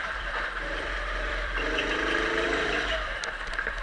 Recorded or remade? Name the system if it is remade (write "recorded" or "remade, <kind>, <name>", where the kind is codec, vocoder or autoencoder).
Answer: remade, vocoder, BigVGAN v2